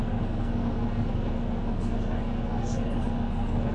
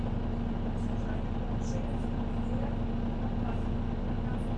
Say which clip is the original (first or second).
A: second